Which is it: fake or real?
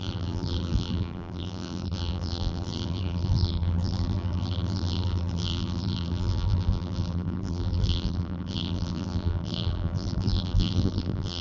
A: fake